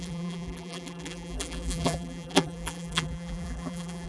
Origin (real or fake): fake